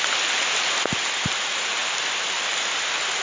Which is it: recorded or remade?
recorded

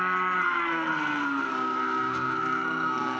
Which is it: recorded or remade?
remade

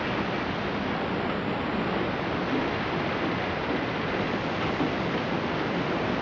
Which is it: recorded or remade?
recorded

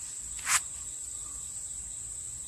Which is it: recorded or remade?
recorded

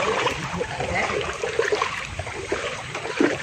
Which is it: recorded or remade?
remade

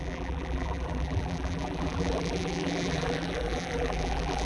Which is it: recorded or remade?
remade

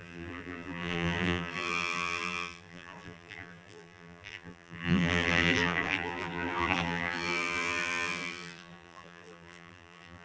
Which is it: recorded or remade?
remade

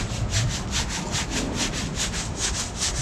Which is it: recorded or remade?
recorded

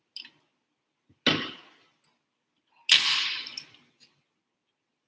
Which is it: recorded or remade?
recorded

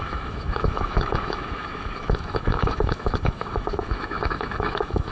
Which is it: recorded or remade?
remade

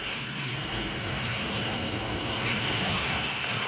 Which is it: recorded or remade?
remade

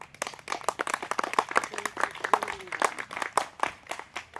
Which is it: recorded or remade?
recorded